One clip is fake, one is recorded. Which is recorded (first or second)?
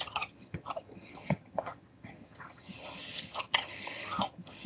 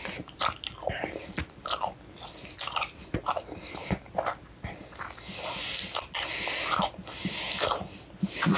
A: second